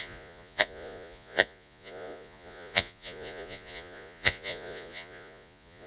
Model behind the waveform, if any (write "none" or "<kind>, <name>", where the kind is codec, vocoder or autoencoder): vocoder, Vocos